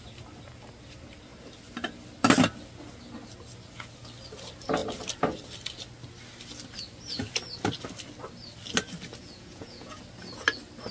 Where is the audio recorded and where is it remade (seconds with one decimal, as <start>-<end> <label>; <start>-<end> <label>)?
0.0-9.2 recorded; 9.2-10.0 remade; 10.0-10.9 recorded